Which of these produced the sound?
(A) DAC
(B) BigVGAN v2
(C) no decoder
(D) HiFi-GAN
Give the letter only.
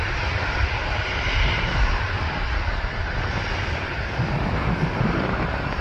B